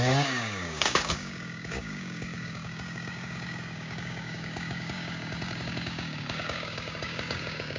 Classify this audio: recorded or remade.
remade